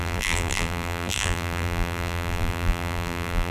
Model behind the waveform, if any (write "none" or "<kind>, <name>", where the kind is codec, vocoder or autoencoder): vocoder, BigVGAN v2